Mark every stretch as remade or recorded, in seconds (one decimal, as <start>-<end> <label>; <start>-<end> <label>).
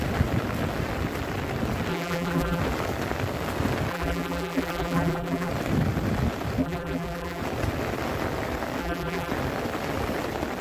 0.0-1.9 recorded; 1.9-2.6 remade; 2.6-3.9 recorded; 3.9-5.5 remade; 5.5-6.6 recorded; 6.6-7.4 remade; 7.4-8.8 recorded; 8.8-9.3 remade; 9.3-10.6 recorded